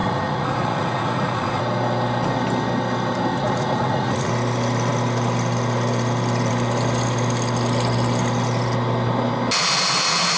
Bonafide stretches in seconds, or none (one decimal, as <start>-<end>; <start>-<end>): 1.6-3.3; 4.3-10.4